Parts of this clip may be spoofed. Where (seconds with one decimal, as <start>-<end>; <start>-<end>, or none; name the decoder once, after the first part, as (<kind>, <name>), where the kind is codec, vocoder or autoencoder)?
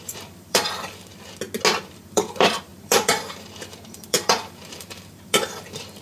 0.0-1.1 (vocoder, BigVGAN v2); 1.8-6.0